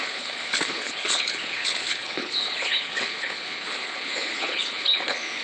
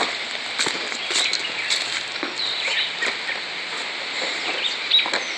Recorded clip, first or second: second